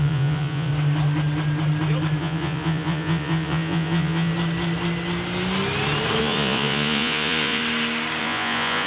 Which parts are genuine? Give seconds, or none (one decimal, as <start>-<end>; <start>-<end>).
0.7-2.2; 4.3-6.2; 7.6-8.2